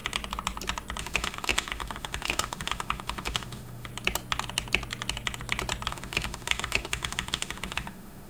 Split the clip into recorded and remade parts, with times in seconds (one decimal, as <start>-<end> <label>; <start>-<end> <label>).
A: 0.0-1.0 recorded; 1.0-3.9 remade; 3.9-5.9 recorded; 5.9-8.3 remade